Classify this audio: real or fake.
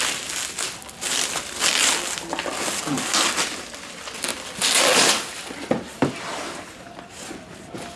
real